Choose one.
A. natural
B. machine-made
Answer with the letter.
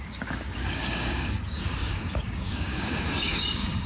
B